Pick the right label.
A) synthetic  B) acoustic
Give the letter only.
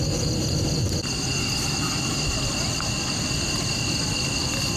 B